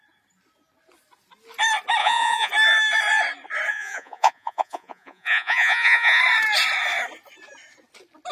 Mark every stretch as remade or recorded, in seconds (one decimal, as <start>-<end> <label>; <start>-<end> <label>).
0.0-2.0 recorded; 2.0-2.5 remade; 2.5-3.7 recorded; 3.7-6.2 remade; 6.2-8.3 recorded